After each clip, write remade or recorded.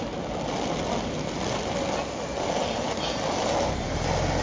recorded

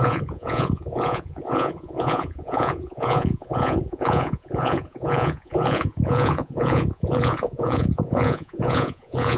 remade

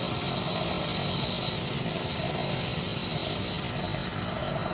recorded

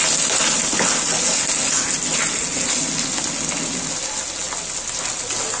recorded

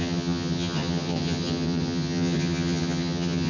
remade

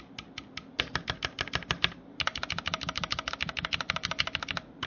recorded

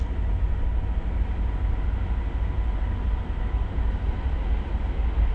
recorded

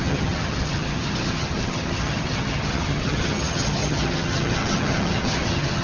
remade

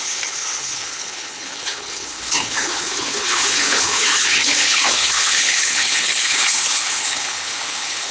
remade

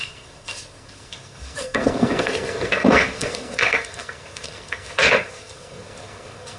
remade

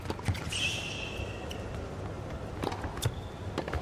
recorded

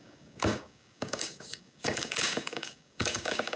remade